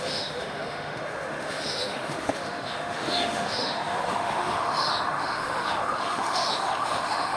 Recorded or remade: remade